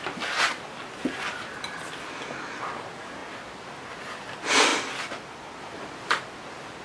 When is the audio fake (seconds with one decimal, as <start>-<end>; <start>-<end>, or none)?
none

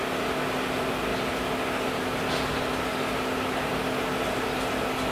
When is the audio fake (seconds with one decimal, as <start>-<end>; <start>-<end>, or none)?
none

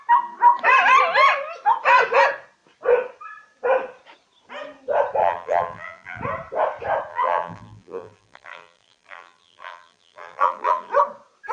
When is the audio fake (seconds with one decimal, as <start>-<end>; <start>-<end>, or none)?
5.2-6.2; 7.1-10.9

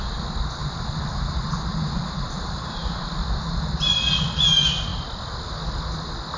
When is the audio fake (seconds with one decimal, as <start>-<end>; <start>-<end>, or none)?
0.6-2.9

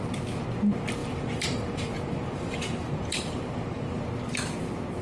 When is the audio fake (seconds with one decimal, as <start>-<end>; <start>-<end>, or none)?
1.0-4.0

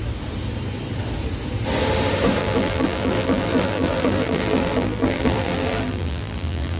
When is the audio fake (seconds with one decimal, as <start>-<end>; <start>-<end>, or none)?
2.4-6.8

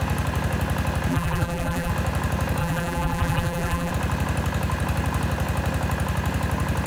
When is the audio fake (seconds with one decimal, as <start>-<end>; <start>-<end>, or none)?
1.1-1.9; 2.6-3.9